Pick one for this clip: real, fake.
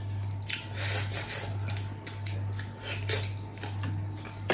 real